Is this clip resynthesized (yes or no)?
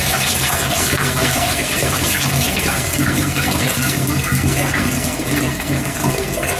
yes